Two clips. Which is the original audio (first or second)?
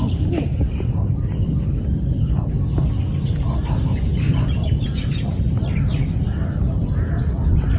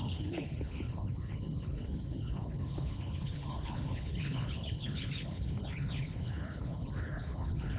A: first